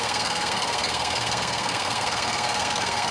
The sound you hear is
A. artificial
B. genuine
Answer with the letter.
A